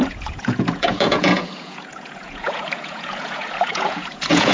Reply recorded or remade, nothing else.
remade